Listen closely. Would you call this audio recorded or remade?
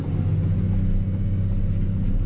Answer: recorded